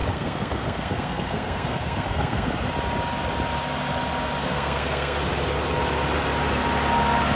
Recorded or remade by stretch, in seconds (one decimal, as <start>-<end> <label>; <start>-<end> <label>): 0.0-2.5 remade; 2.5-4.4 recorded; 4.4-5.2 remade; 5.2-7.4 recorded